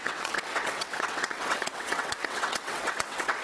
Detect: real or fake fake